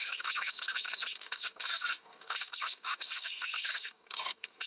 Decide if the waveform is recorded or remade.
remade